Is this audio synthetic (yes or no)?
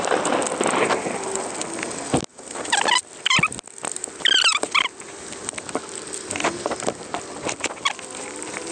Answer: no